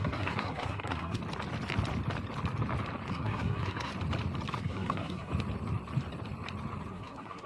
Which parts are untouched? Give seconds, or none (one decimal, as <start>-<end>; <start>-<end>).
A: 1.2-3.1; 3.9-4.6; 5.3-6.9